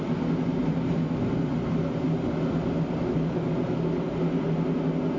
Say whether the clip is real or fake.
real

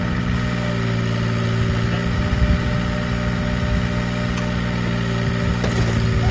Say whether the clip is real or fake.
real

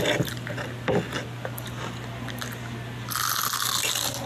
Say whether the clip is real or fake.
real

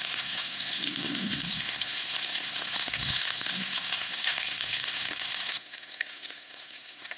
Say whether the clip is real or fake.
fake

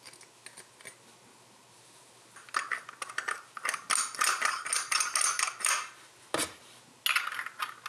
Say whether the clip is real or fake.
real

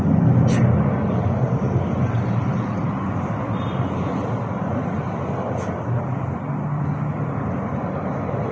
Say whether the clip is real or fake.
real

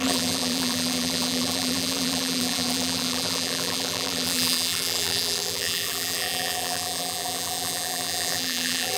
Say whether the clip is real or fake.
fake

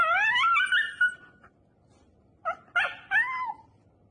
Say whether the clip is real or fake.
real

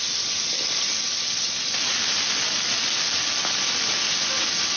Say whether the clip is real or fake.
real